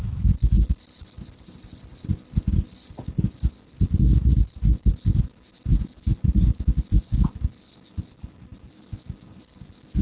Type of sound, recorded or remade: recorded